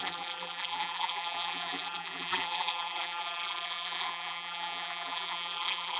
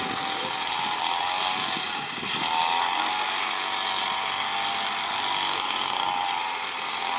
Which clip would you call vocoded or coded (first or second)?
first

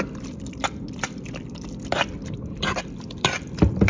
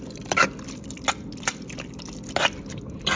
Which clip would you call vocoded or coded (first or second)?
first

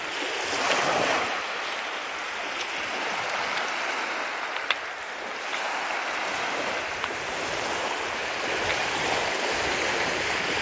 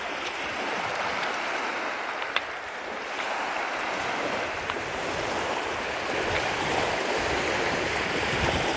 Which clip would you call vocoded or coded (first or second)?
second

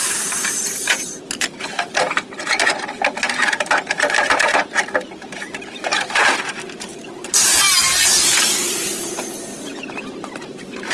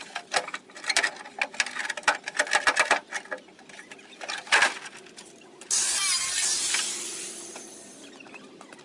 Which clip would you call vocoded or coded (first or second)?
first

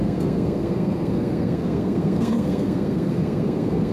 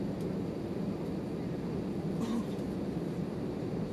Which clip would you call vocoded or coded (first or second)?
first